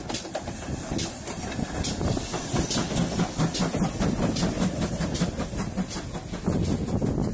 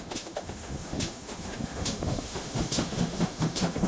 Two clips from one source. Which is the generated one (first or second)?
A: second